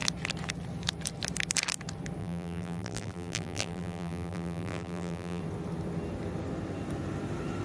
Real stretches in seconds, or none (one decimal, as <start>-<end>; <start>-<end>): 0.0-2.2; 5.4-7.6

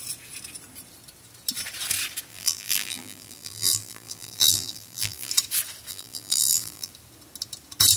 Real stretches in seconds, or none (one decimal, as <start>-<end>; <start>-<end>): 0.0-2.3; 5.3-5.9; 6.9-8.0

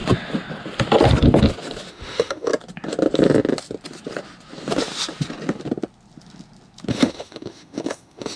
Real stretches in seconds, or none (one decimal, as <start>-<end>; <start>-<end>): 0.0-1.9; 2.5-6.9